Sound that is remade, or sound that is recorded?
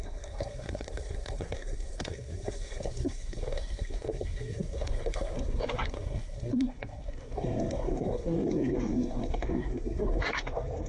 remade